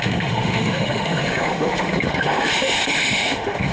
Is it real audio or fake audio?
fake